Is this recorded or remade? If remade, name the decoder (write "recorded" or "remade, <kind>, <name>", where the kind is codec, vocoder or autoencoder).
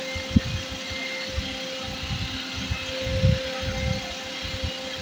recorded